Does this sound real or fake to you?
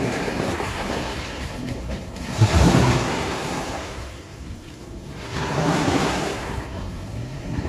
fake